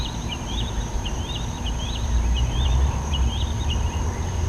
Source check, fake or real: fake